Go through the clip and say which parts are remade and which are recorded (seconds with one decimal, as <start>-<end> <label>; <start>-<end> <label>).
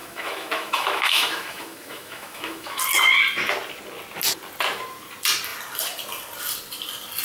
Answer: 0.0-2.8 remade; 2.8-7.2 recorded